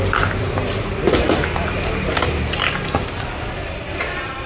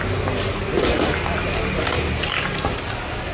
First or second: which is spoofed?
first